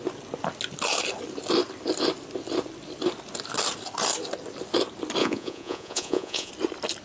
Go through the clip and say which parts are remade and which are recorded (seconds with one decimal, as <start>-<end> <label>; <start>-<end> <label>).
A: 0.0-5.2 recorded; 5.2-6.5 remade; 6.5-7.0 recorded